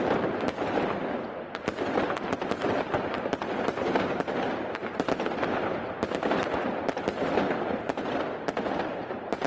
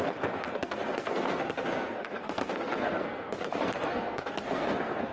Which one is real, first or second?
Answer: first